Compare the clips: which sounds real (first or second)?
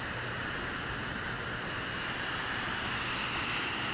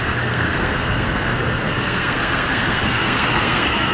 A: first